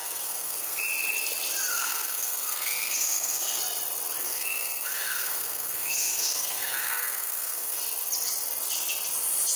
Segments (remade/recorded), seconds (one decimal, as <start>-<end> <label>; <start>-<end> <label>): 0.0-0.8 remade; 0.8-1.7 recorded; 1.7-3.6 remade; 3.6-4.2 recorded; 4.2-7.8 remade; 7.8-9.6 recorded